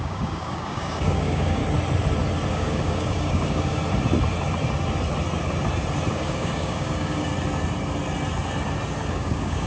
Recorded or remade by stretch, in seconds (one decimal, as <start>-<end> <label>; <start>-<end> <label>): 0.0-1.6 remade; 1.6-2.5 recorded; 2.5-3.8 remade; 3.8-6.1 recorded; 6.1-7.3 remade; 7.3-9.1 recorded; 9.1-9.7 remade